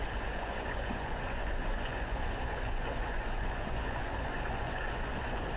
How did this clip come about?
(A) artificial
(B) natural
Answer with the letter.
A